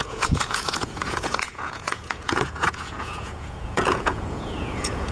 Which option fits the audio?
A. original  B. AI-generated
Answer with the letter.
B